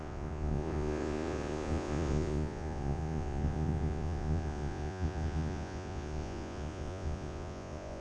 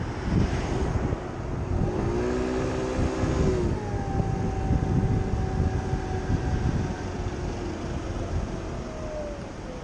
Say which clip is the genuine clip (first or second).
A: second